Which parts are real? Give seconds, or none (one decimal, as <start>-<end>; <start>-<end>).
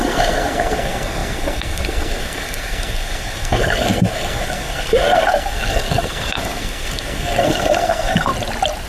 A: 8.3-8.9